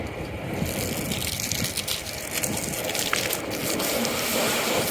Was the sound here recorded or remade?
recorded